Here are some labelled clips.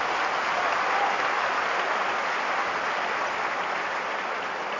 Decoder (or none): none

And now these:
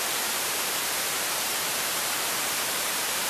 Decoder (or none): vocoder, BigVGAN v2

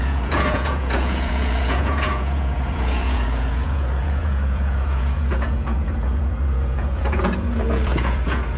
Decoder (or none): vocoder, Vocos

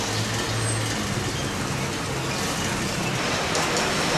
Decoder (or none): none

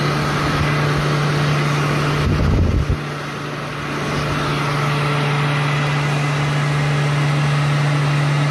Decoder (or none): none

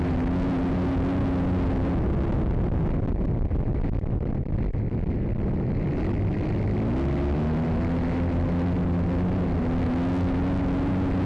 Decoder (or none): none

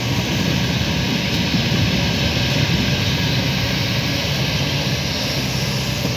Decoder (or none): none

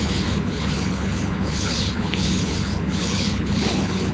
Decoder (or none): codec, HILCodec